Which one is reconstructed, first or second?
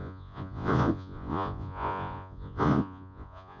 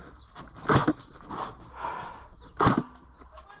first